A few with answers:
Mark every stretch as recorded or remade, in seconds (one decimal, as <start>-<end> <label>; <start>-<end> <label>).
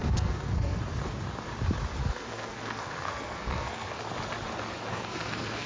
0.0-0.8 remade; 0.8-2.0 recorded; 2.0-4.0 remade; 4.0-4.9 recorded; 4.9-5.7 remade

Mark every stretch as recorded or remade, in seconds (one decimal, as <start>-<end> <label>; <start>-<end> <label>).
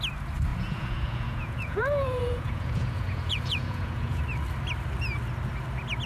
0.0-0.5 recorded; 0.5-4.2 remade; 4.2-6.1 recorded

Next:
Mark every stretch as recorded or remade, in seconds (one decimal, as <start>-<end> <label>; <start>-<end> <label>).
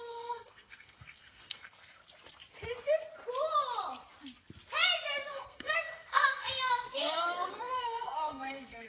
0.0-2.0 remade; 2.0-5.3 recorded; 5.3-8.9 remade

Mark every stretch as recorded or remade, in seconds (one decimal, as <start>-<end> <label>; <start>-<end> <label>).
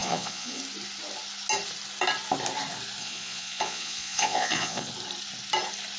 0.0-0.6 remade; 0.6-3.0 recorded; 3.0-4.9 remade; 4.9-6.0 recorded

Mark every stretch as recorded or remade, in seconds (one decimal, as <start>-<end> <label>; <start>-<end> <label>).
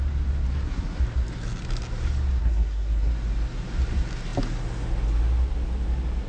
0.0-0.5 recorded; 0.5-1.0 remade; 1.0-2.4 recorded; 2.4-3.1 remade; 3.1-6.3 recorded